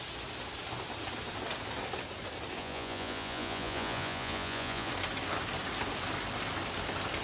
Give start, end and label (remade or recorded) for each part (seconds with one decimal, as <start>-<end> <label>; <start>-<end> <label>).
0.0-2.6 recorded; 2.6-4.9 remade; 4.9-7.2 recorded